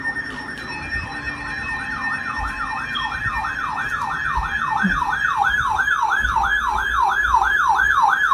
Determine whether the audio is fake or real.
real